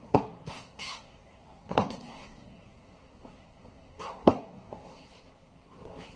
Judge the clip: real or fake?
fake